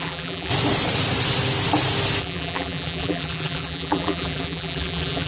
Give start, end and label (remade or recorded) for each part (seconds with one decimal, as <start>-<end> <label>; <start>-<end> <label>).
0.0-0.5 remade; 0.5-2.2 recorded; 2.2-5.3 remade